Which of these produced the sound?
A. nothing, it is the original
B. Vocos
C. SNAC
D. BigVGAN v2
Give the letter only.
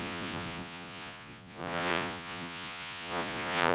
B